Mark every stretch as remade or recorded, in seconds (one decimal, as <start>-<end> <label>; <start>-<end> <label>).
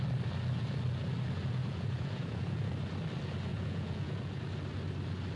0.0-1.6 recorded; 1.6-2.7 remade; 2.7-3.5 recorded; 3.5-4.4 remade; 4.4-5.4 recorded